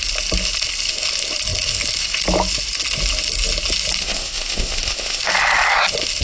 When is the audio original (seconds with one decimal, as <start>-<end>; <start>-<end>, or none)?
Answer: 0.0-4.0; 5.2-6.2